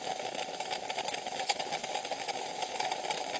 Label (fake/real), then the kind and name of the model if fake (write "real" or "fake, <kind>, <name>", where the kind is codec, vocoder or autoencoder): real